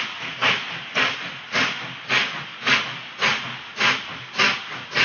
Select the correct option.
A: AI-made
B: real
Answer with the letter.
B